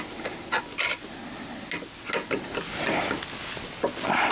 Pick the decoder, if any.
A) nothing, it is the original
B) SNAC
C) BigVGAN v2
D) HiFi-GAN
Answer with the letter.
A